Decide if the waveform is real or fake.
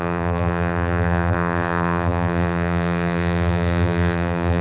fake